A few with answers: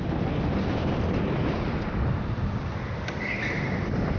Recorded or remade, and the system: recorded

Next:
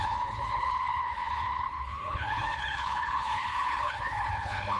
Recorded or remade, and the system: remade, codec, HILCodec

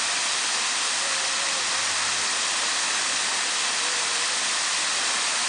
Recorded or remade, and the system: recorded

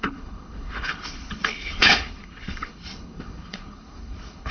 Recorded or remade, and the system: remade, codec, HILCodec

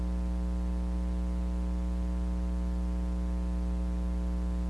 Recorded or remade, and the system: recorded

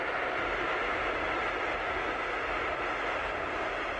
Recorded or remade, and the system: recorded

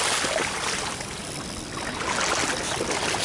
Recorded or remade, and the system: recorded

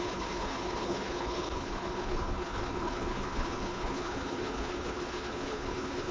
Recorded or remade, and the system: remade, codec, HILCodec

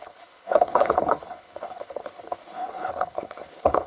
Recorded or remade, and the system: remade, codec, HILCodec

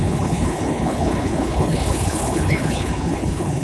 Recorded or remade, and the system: remade, codec, HILCodec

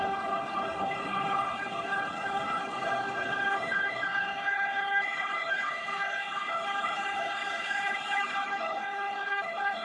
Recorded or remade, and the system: remade, codec, HILCodec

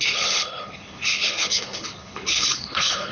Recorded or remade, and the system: remade, codec, HILCodec